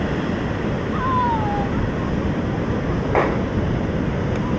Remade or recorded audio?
recorded